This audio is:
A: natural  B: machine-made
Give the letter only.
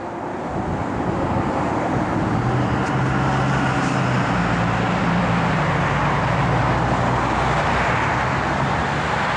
A